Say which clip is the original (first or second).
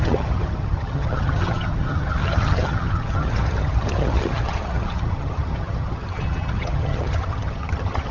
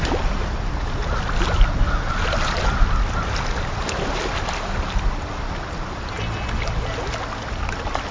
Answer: second